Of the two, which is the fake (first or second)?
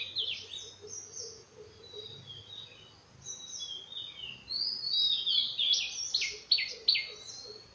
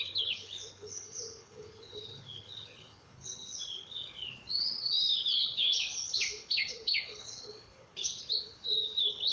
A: second